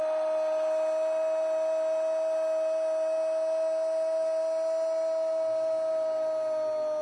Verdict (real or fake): real